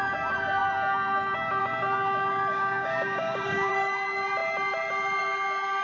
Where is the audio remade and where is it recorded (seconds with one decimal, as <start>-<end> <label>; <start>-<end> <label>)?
0.0-2.5 recorded; 2.5-3.7 remade; 3.7-5.8 recorded